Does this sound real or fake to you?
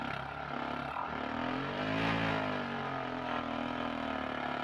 real